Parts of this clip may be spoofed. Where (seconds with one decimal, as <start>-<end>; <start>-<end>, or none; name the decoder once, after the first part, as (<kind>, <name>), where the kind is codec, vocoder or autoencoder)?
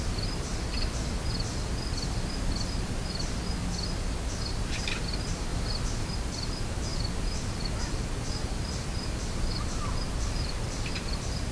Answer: 0.0-0.5 (vocoder, BigVGAN v2); 2.7-3.6; 4.5-5.5; 6.0-11.5